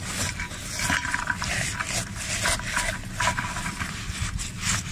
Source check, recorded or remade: recorded